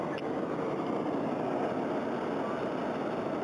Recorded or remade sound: recorded